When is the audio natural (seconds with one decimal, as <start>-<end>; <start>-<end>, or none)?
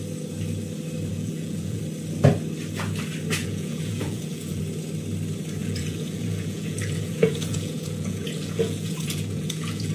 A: 0.0-1.1; 1.8-3.4; 4.6-5.6